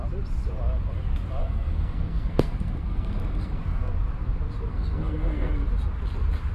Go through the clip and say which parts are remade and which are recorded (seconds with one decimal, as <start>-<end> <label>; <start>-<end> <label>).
0.0-1.4 recorded; 1.4-3.9 remade; 3.9-4.7 recorded; 4.7-5.5 remade; 5.5-6.5 recorded